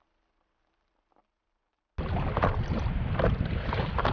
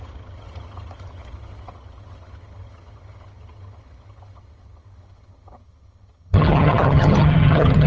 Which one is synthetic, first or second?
second